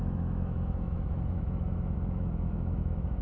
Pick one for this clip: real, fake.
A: fake